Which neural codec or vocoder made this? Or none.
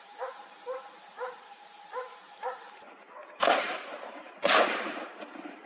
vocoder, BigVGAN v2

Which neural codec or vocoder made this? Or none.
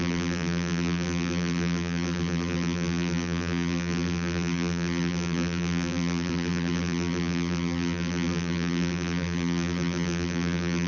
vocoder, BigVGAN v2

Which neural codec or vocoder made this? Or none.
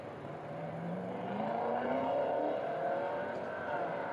vocoder, BigVGAN v2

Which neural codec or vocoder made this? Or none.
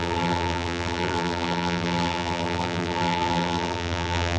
vocoder, BigVGAN v2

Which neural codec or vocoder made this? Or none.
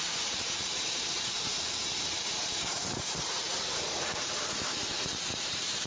vocoder, BigVGAN v2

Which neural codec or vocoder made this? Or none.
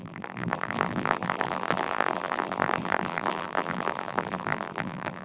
vocoder, BigVGAN v2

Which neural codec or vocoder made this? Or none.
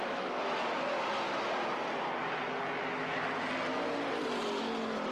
none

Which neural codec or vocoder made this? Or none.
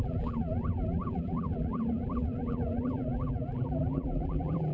vocoder, BigVGAN v2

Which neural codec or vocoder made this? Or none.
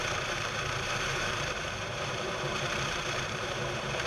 vocoder, BigVGAN v2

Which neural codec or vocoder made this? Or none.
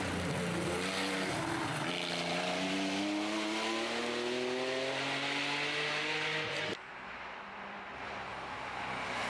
none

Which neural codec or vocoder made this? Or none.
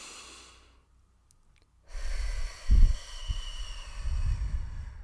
none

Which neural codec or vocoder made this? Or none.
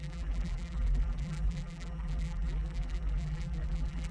vocoder, BigVGAN v2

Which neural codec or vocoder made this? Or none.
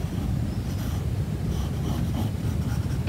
none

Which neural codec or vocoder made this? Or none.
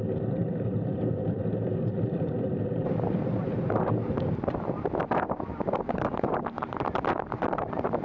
vocoder, BigVGAN v2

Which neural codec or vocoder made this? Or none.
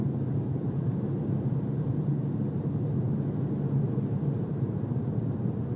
vocoder, BigVGAN v2